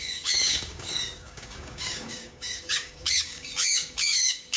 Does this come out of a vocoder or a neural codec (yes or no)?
yes